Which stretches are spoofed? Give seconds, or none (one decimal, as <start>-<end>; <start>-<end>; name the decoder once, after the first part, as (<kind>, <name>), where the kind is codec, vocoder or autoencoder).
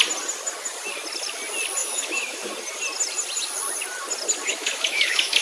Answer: 1.8-2.5 (autoencoder, DAC-VAE); 4.5-5.4